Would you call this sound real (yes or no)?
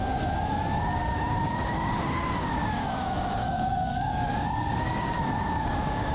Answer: no